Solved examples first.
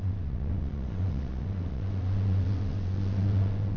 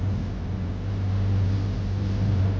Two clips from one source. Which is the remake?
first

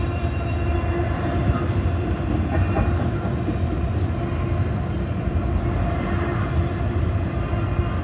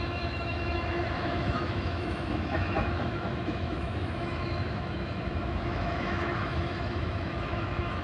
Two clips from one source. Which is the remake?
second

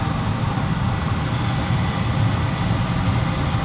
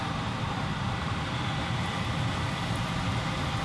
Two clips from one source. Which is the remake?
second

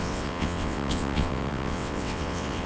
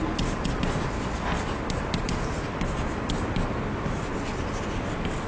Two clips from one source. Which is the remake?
first